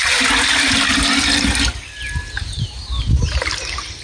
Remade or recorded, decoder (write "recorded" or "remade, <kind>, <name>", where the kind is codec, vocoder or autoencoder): recorded